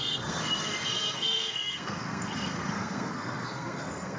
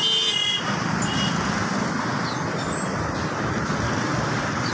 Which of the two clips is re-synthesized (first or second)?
first